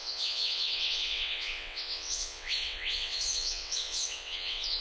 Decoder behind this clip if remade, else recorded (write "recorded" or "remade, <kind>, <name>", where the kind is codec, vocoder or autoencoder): remade, vocoder, WaveNeXt